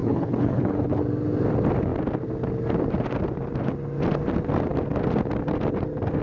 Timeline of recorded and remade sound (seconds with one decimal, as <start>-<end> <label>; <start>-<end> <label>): 0.0-1.0 remade; 1.0-6.2 recorded

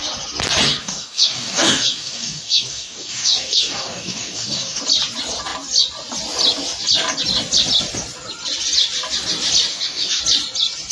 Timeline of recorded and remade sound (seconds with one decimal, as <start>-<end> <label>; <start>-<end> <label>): 0.0-0.8 recorded; 0.8-4.8 remade; 4.8-9.7 recorded; 9.7-10.2 remade; 10.2-10.9 recorded

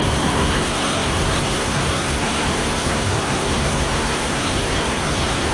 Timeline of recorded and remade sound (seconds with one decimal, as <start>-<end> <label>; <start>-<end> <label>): 0.0-5.5 remade

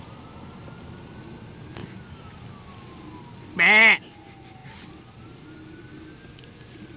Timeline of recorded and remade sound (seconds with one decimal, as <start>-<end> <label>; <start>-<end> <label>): 0.0-1.8 recorded; 1.8-2.4 remade; 2.4-7.0 recorded

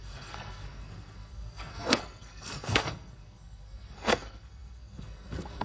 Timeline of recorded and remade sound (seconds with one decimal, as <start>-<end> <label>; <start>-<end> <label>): 0.0-5.6 remade

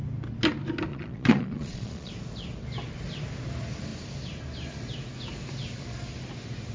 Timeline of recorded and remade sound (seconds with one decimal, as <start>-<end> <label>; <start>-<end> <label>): 0.0-0.9 recorded; 0.9-2.1 remade; 2.1-6.7 recorded

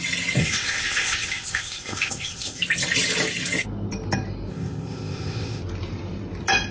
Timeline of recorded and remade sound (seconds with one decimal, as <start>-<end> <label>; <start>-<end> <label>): 0.0-0.4 recorded; 0.4-2.6 remade; 2.6-4.5 recorded; 4.5-5.6 remade; 5.6-6.7 recorded

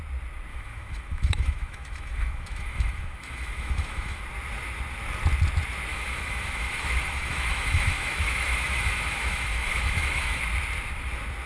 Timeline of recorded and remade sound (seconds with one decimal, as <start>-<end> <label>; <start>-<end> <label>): 0.0-0.5 recorded; 0.5-4.2 remade; 4.2-5.9 recorded; 5.9-10.4 remade; 10.4-11.5 recorded